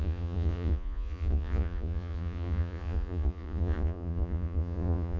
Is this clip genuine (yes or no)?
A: no